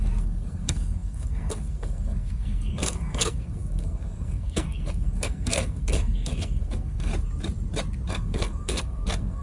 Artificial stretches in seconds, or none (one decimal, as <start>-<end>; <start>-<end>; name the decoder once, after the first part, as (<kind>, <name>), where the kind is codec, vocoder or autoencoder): 0.0-7.1 (codec, SNAC); 8.1-9.4